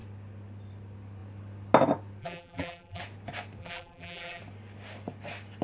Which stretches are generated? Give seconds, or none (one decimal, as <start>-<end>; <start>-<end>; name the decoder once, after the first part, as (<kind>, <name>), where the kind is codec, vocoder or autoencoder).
2.2-3.0 (vocoder, BigVGAN v2); 3.6-4.4